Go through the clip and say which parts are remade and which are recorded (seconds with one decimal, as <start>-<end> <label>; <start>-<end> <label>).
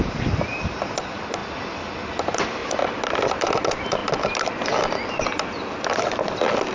0.0-6.7 remade